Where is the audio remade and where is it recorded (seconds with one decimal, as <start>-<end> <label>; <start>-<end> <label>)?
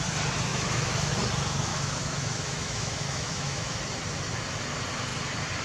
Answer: 0.0-0.5 recorded; 0.5-1.1 remade; 1.1-1.7 recorded; 1.7-3.8 remade; 3.8-5.6 recorded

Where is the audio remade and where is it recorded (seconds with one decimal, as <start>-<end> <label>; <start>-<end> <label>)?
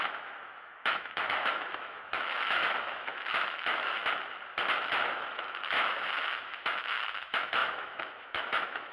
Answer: 0.0-4.0 remade; 4.0-4.9 recorded; 4.9-8.9 remade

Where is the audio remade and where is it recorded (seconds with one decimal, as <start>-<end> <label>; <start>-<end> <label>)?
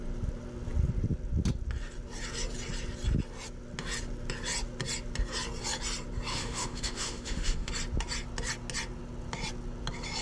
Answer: 0.0-6.3 recorded; 6.3-7.7 remade; 7.7-10.2 recorded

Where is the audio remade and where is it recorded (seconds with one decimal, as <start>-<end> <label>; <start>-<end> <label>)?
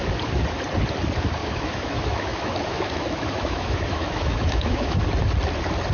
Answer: 0.0-1.4 recorded; 1.4-4.9 remade; 4.9-5.9 recorded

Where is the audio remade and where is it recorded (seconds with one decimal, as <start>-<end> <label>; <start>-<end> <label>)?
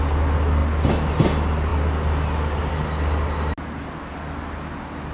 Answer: 0.0-5.1 recorded